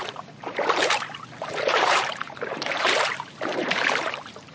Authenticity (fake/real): fake